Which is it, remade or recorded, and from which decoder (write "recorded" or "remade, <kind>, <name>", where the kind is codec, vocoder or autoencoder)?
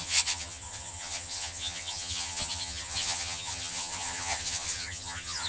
remade, vocoder, HiFi-GAN